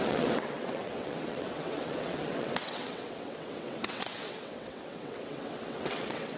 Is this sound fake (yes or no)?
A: yes